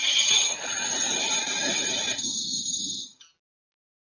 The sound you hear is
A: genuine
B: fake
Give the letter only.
A